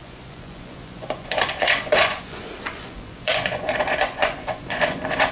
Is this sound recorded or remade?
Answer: remade